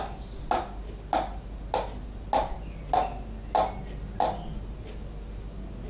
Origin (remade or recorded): recorded